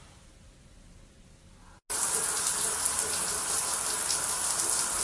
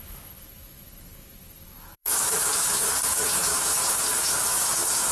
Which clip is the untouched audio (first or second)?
first